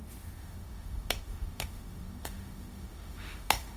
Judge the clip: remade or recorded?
remade